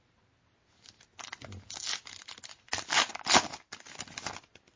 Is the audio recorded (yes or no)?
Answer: yes